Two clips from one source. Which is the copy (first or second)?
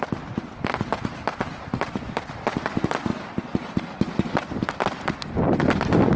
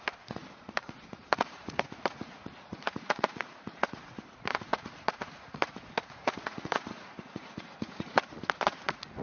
second